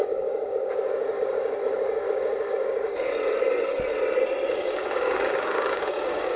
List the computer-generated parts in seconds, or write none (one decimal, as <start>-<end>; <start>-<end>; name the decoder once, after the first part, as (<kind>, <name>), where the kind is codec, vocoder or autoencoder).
0.0-3.1 (codec, DAC); 4.5-6.4